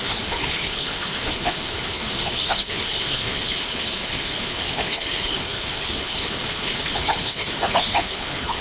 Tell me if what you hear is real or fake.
fake